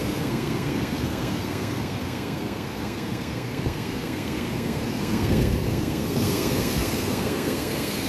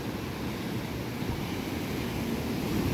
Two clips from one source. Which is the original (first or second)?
second